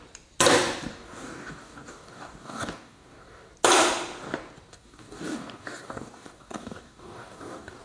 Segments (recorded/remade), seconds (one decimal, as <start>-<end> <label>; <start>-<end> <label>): 0.0-0.9 recorded; 0.9-3.5 remade; 3.5-4.7 recorded; 4.7-7.8 remade